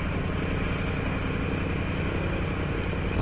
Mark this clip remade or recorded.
recorded